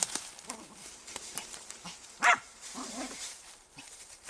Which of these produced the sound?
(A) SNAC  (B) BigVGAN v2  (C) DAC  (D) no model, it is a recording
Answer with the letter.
B